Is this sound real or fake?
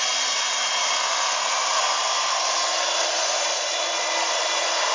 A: real